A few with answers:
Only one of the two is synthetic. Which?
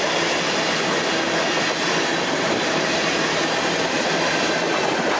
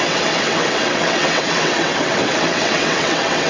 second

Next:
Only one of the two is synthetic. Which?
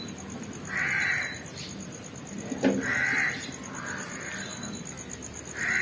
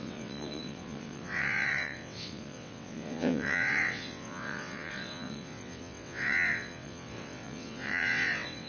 second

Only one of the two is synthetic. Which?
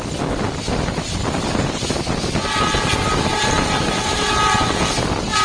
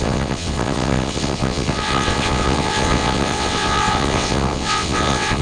second